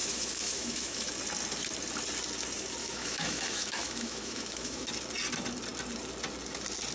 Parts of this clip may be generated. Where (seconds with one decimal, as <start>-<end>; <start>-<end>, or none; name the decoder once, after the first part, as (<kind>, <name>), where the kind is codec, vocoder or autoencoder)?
0.0-1.1 (autoencoder, DAC-VAE); 2.8-4.9